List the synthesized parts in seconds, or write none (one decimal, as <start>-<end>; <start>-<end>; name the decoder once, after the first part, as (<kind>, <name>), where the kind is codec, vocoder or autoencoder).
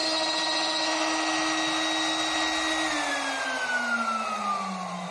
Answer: none